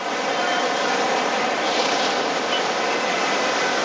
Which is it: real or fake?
real